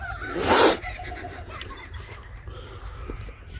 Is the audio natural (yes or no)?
yes